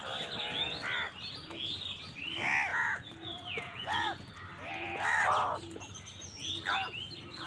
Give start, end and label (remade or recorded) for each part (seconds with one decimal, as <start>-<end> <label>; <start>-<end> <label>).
0.0-2.7 recorded; 2.7-4.3 remade; 4.3-7.5 recorded